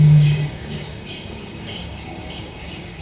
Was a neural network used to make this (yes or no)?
yes